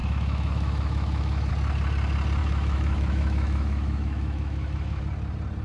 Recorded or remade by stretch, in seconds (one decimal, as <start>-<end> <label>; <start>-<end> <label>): 0.0-1.5 remade; 1.5-2.4 recorded; 2.4-5.0 remade; 5.0-5.6 recorded